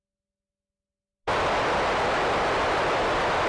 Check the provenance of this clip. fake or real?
real